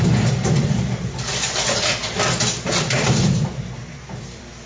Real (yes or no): no